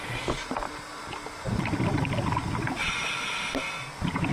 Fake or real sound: real